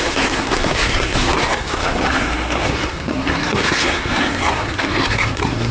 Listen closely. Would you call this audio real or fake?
fake